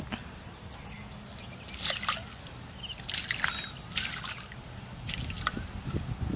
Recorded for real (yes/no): yes